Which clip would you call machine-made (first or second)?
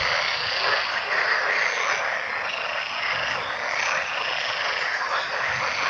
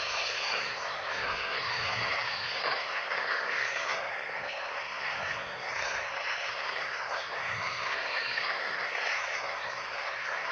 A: second